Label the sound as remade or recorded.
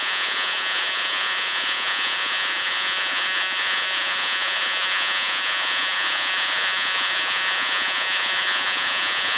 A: remade